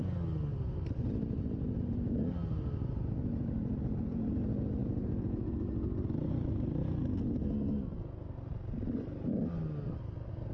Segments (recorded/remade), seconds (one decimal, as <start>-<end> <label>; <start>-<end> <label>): 0.0-4.8 recorded; 4.8-5.5 remade; 5.5-10.5 recorded